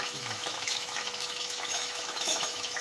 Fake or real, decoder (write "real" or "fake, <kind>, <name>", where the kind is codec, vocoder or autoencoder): fake, autoencoder, DAC-VAE